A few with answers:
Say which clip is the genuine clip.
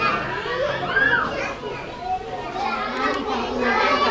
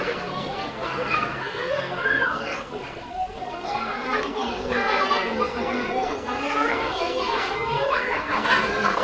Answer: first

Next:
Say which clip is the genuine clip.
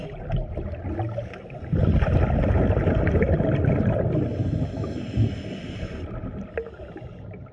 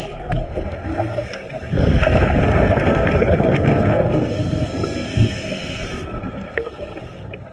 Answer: first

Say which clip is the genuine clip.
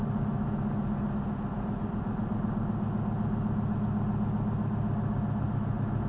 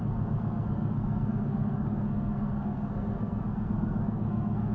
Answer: first